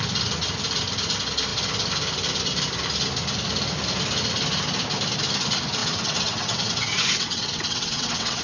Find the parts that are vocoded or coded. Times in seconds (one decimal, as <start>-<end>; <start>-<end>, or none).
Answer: 5.8-8.4

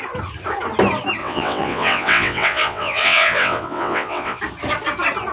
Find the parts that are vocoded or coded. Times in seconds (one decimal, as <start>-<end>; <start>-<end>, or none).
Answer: 1.2-4.4

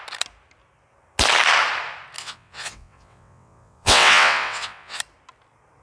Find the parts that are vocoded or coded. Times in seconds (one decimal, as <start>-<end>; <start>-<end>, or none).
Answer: 2.2-5.0

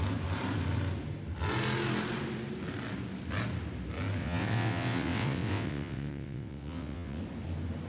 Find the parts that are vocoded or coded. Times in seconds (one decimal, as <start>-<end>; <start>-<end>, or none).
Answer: 4.2-7.2